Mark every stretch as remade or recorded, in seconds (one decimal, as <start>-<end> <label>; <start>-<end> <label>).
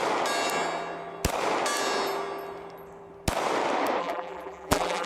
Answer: 0.0-4.0 recorded; 4.0-5.1 remade